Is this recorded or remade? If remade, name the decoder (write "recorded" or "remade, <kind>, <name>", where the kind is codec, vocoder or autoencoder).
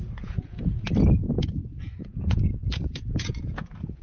remade, vocoder, Vocos